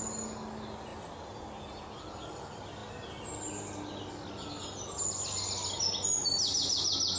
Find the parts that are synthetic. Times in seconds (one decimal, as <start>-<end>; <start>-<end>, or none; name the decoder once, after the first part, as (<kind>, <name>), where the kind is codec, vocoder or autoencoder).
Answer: none